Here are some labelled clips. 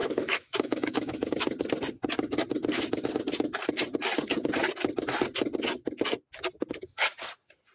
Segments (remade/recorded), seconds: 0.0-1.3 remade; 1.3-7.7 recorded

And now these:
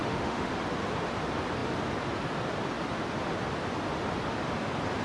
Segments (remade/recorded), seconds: 0.0-0.5 remade; 0.5-5.0 recorded

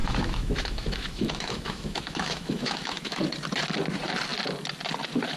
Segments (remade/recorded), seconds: 0.0-3.2 remade; 3.2-5.4 recorded

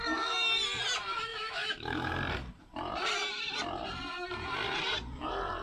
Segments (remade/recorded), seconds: 0.0-1.3 recorded; 1.3-2.2 remade; 2.2-5.6 recorded

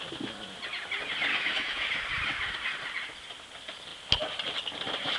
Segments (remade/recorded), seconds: 0.0-1.3 recorded; 1.3-1.9 remade; 1.9-5.2 recorded

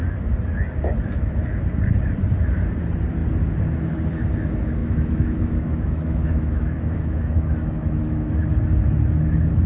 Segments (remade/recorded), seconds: 0.0-4.8 recorded; 4.8-8.3 remade; 8.3-9.7 recorded

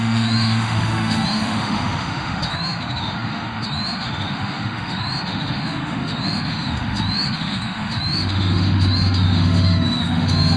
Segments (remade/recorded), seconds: 0.0-10.6 remade

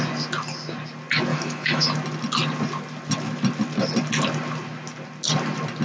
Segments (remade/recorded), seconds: 0.0-1.3 recorded; 1.3-1.9 remade; 1.9-5.8 recorded